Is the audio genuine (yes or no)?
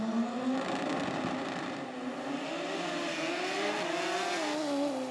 yes